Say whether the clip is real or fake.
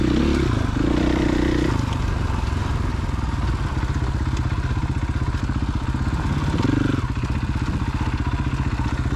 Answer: real